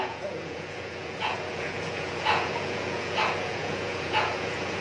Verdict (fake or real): fake